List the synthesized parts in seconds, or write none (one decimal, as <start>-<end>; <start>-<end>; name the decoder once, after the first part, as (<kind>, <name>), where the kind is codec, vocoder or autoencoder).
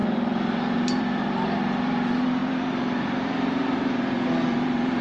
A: 0.0-5.0 (vocoder, BigVGAN v2)